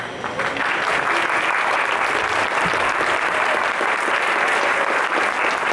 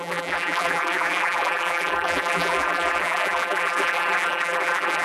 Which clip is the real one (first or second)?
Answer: first